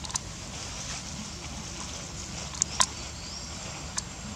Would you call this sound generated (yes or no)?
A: no